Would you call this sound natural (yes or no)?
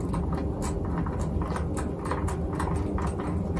yes